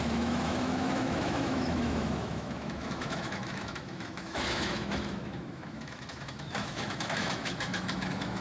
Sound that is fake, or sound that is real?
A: fake